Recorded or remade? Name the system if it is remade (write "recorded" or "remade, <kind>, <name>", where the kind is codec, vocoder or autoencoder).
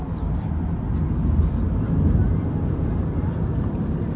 recorded